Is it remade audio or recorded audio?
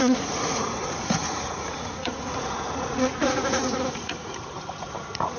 remade